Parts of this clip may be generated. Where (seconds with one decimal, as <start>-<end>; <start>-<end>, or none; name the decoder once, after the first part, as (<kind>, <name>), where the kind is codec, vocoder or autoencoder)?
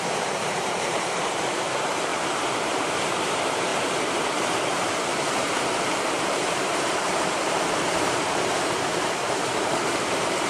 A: 0.0-10.5 (vocoder, BigVGAN v2)